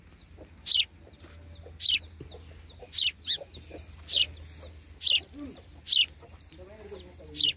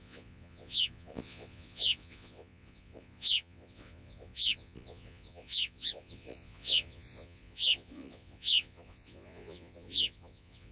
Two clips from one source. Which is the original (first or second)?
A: first